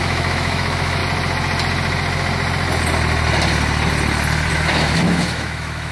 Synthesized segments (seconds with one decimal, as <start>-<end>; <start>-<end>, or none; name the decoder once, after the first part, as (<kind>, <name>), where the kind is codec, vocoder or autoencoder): 0.0-1.0 (autoencoder, DAC-VAE); 4.5-5.9